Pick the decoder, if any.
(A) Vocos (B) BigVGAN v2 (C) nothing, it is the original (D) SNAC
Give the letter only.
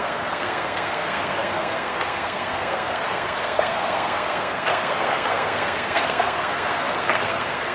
D